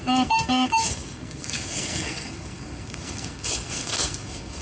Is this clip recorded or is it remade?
remade